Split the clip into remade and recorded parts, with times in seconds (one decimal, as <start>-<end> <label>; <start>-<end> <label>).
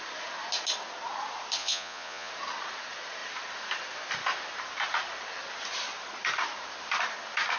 0.0-1.6 recorded; 1.6-2.3 remade; 2.3-7.6 recorded